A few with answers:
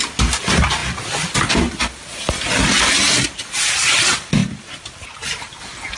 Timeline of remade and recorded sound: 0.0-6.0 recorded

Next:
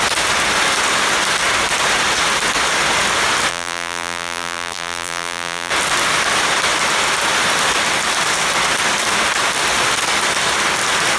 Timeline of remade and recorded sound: 0.0-3.5 recorded; 3.5-5.7 remade; 5.7-11.2 recorded